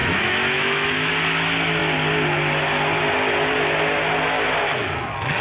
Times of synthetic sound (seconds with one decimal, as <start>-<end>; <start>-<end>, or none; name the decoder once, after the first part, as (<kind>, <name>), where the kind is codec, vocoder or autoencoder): 0.0-1.1 (autoencoder, DAC-VAE)